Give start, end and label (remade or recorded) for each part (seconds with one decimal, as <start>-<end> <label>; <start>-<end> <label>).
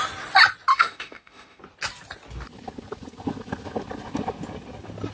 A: 0.0-0.7 recorded; 0.7-1.6 remade; 1.6-5.1 recorded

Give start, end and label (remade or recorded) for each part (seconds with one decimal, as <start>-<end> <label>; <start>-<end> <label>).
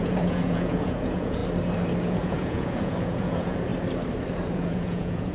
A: 0.0-1.4 remade; 1.4-2.0 recorded; 2.0-3.7 remade; 3.7-4.5 recorded; 4.5-5.3 remade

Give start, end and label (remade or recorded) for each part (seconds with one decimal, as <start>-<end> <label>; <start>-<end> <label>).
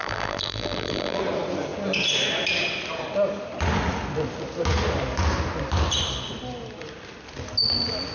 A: 0.0-1.2 remade; 1.2-8.1 recorded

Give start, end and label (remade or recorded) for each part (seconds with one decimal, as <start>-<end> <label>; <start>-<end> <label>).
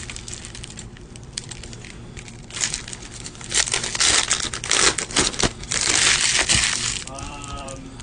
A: 0.0-1.7 remade; 1.7-6.5 recorded; 6.5-8.0 remade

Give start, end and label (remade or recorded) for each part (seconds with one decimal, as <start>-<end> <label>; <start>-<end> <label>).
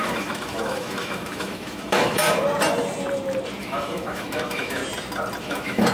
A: 0.0-2.2 remade; 2.2-3.6 recorded; 3.6-4.8 remade; 4.8-5.4 recorded; 5.4-5.9 remade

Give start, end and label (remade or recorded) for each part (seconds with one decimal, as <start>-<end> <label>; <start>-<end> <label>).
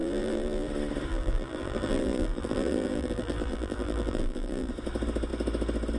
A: 0.0-0.7 remade; 0.7-1.1 recorded; 1.1-4.7 remade; 4.7-6.0 recorded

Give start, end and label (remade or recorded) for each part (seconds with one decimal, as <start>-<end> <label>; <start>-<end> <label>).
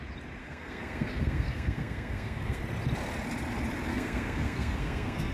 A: 0.0-0.4 recorded; 0.4-2.6 remade; 2.6-3.9 recorded; 3.9-5.3 remade